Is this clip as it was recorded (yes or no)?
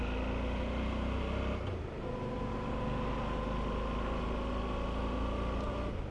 yes